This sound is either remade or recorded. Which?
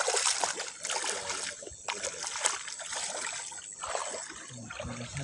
recorded